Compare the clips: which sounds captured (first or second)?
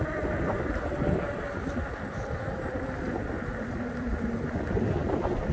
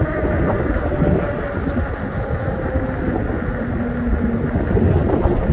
second